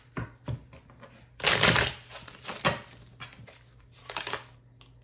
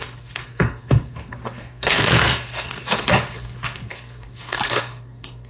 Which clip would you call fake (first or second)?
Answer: second